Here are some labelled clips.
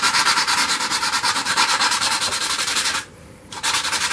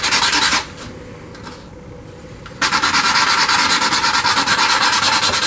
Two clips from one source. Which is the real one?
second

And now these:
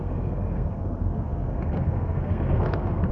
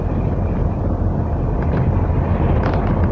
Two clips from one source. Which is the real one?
second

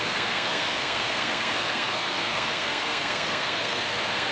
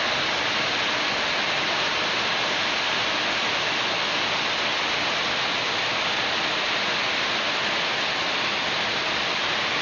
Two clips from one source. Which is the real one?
second